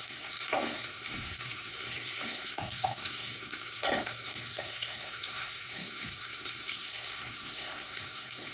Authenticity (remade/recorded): remade